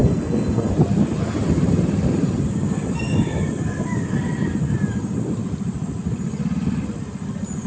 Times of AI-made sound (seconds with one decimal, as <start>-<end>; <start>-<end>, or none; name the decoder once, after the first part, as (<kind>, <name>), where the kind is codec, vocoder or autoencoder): 0.0-0.7 (codec, SNAC)